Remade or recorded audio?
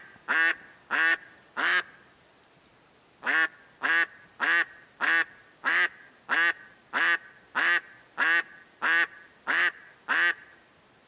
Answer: recorded